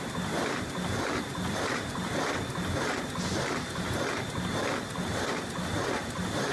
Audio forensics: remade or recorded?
recorded